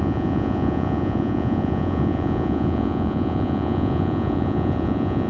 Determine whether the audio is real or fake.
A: fake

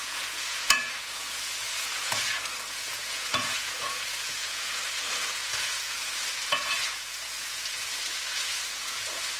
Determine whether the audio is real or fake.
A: fake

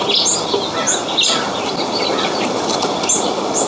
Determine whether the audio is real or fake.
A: real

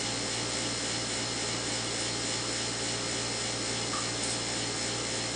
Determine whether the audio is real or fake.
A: real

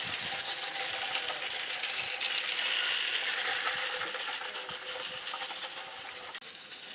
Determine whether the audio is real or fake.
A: real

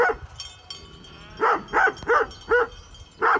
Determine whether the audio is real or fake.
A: real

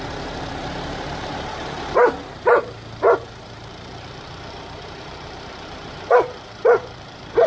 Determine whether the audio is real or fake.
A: fake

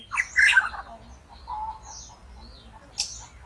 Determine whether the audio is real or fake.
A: real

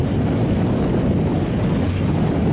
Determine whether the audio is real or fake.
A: real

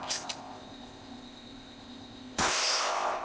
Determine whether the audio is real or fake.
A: fake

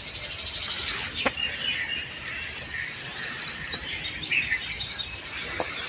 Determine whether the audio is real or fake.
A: real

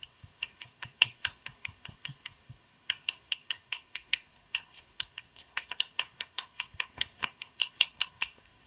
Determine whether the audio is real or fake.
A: fake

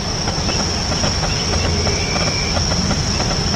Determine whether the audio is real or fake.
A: real